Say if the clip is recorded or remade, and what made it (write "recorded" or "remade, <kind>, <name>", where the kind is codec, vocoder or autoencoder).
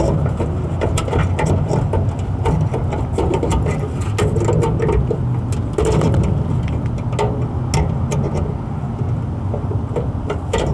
recorded